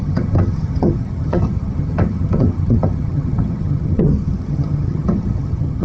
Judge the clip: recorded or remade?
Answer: remade